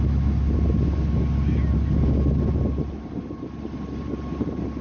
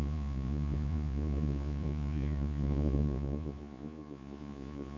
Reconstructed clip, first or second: second